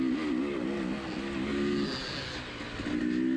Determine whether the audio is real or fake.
real